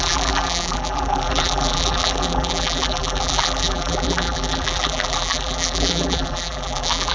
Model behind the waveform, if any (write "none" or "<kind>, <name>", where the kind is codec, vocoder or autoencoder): vocoder, BigVGAN v2